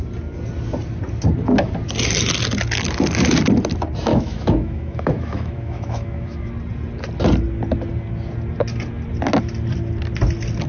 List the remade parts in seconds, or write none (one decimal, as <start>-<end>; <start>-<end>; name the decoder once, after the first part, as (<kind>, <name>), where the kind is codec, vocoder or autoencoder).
4.1-6.5 (autoencoder, DAC-VAE)